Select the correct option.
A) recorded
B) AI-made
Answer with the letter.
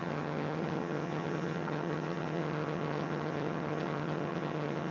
B